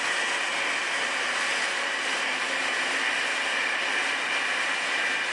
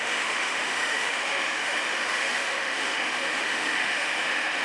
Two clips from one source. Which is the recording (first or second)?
first